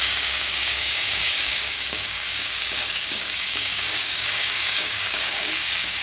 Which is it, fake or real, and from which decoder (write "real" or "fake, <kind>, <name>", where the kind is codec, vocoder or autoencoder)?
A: fake, codec, DAC